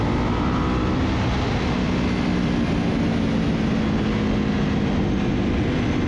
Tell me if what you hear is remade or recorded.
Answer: recorded